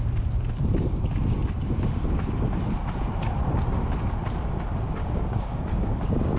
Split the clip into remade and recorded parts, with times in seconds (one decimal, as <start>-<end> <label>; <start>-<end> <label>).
0.0-5.0 recorded; 5.0-6.4 remade